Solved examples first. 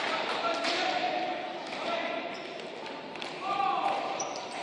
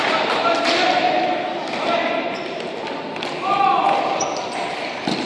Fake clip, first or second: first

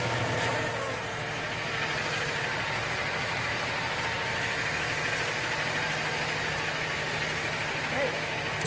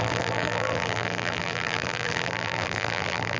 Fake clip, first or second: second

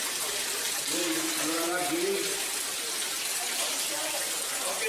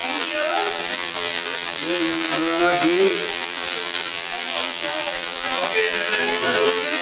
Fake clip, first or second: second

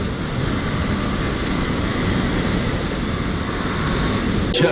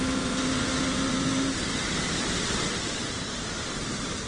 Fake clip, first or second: second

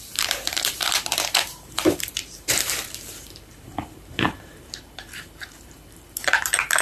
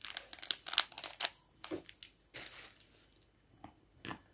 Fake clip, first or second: first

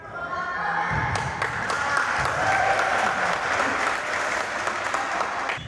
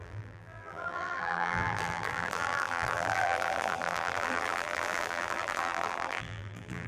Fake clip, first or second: second